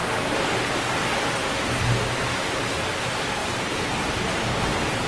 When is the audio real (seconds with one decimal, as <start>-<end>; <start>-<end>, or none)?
0.0-5.1